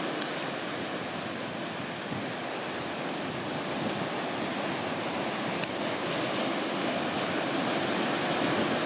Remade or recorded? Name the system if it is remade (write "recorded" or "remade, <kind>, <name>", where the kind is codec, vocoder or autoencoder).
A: recorded